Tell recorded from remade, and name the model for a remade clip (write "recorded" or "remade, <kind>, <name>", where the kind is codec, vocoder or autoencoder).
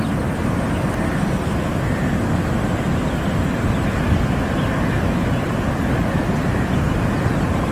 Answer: recorded